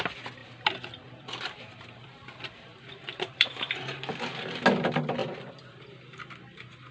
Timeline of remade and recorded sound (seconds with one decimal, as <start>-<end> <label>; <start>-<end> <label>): 0.0-0.4 recorded; 0.4-4.1 remade; 4.1-5.2 recorded; 5.2-5.8 remade; 5.8-6.9 recorded